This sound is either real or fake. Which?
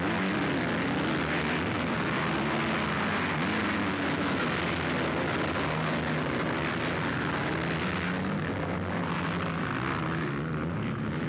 real